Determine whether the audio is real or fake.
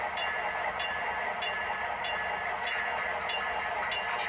real